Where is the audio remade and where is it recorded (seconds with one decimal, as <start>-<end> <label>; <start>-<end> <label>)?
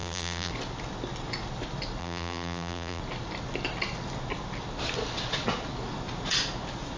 0.0-0.5 remade; 0.5-2.0 recorded; 2.0-3.0 remade; 3.0-7.0 recorded